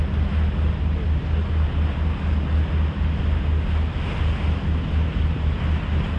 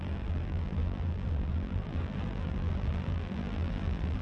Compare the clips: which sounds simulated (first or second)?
second